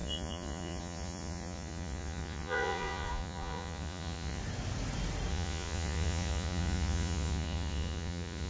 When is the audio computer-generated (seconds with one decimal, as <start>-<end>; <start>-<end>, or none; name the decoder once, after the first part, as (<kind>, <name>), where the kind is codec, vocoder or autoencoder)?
0.0-4.4 (vocoder, Vocos); 5.3-8.5